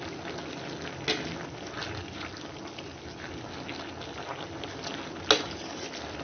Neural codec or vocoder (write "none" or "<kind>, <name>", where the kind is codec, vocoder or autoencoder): none